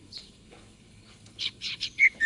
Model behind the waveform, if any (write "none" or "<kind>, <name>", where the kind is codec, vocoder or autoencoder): codec, HILCodec